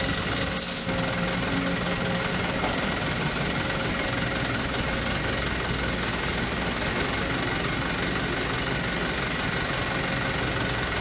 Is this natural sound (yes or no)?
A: yes